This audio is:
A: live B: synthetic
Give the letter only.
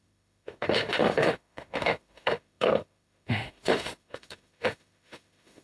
B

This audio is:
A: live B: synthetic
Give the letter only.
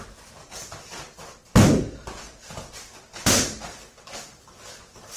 A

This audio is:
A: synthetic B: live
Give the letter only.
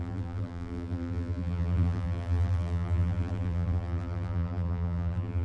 A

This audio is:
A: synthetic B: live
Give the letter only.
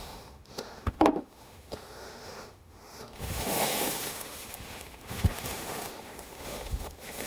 A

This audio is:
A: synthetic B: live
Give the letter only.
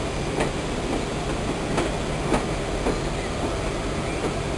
B